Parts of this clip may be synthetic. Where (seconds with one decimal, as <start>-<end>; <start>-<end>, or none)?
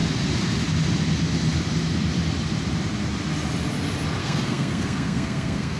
4.2-5.8